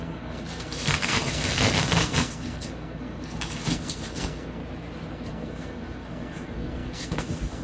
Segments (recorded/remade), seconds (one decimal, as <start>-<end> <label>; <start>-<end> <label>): 0.0-4.6 remade; 4.6-5.1 recorded; 5.1-7.6 remade